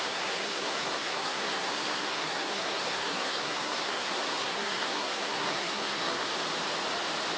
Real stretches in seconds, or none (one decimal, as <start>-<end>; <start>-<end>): 6.3-7.4